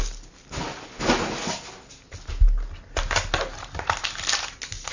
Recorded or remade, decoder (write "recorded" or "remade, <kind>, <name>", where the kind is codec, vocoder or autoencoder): recorded